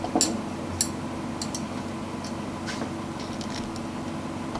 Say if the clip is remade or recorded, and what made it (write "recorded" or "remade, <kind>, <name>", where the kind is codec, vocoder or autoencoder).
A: recorded